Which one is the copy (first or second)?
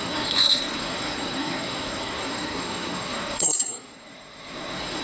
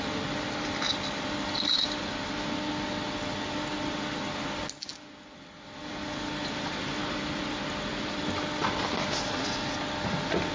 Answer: first